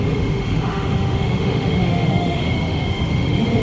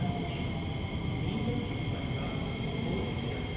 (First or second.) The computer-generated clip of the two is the first